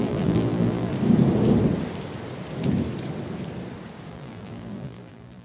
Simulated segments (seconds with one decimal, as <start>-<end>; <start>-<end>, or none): 0.0-0.9; 4.1-5.4